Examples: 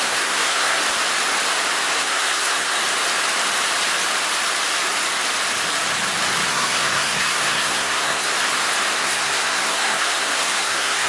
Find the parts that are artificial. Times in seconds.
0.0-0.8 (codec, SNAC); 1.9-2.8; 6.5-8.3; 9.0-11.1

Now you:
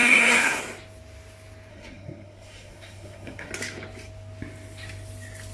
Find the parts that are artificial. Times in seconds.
0.0-0.6 (codec, SNAC); 1.7-3.5

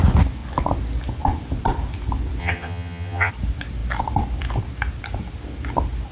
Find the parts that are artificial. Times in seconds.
2.4-3.3 (vocoder, HiFi-GAN)

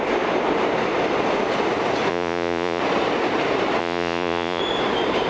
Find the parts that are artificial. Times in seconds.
2.1-2.8 (vocoder, Vocos); 3.8-4.6

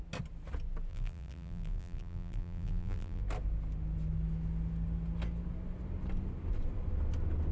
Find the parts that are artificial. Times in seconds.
0.9-3.2 (vocoder, BigVGAN v2)